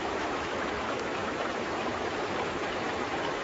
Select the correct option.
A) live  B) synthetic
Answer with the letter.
B